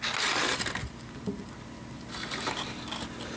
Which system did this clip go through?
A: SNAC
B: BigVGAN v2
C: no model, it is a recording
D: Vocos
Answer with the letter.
C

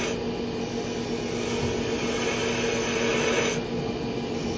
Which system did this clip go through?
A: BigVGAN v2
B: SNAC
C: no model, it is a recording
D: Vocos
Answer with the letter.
C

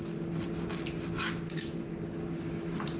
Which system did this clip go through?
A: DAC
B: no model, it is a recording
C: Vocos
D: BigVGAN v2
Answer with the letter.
B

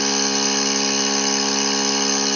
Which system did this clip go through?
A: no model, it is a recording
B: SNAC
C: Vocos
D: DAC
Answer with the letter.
A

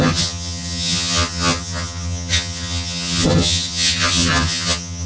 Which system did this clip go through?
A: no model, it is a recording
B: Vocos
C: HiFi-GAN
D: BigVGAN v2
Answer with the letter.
C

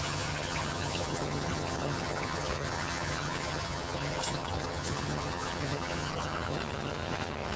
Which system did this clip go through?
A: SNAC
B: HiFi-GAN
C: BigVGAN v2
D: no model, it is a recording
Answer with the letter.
B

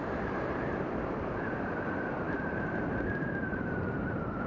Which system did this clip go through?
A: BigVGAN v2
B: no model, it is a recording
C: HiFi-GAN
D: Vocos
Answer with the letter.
A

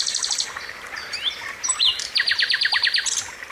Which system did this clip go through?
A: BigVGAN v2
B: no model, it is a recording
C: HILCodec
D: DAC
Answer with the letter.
A